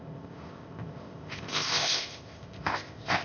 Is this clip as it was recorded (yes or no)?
no